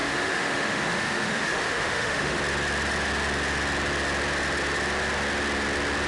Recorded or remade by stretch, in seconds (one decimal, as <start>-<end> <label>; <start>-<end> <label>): 0.0-2.4 remade; 2.4-6.1 recorded